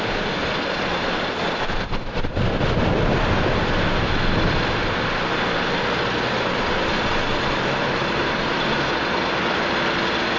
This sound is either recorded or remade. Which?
recorded